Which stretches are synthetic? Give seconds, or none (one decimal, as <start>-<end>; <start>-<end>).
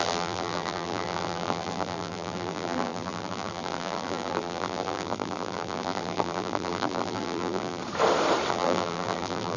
0.0-7.8; 8.5-9.6